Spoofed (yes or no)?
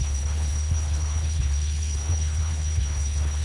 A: yes